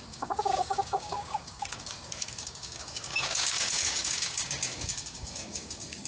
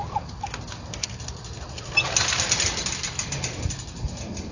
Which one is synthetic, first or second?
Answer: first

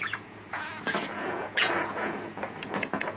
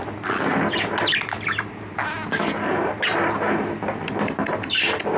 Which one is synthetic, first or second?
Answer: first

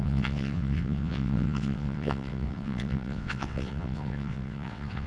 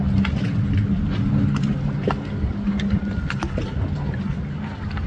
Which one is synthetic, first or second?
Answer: first